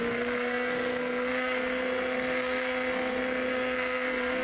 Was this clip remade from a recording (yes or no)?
yes